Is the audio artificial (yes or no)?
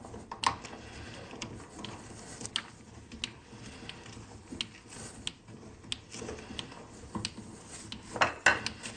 no